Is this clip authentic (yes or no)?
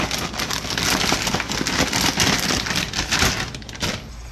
yes